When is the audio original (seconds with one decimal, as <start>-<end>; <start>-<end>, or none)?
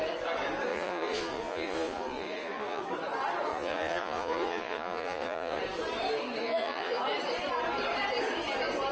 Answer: 0.0-0.7; 2.8-3.5; 5.6-6.4; 7.0-8.9